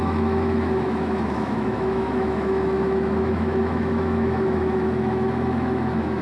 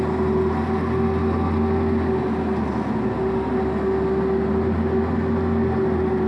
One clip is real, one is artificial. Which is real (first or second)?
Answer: second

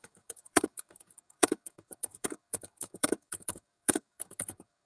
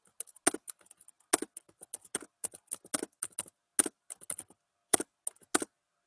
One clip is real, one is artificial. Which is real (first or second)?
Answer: second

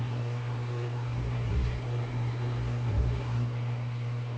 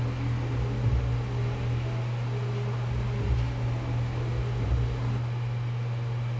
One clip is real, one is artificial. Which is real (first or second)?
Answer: second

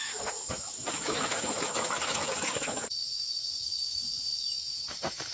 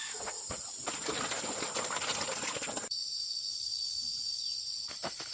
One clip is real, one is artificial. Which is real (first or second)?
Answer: second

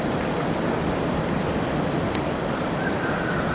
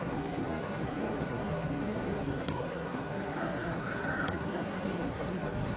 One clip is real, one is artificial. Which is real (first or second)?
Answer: first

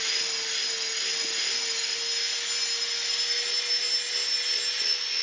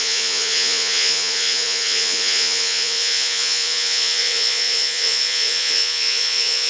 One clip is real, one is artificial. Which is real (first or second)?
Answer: first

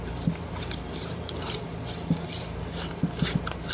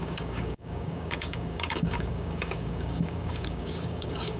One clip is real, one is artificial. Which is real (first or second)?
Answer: first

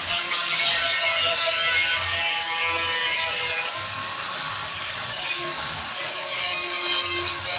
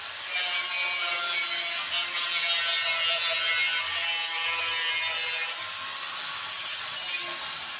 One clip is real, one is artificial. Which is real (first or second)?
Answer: second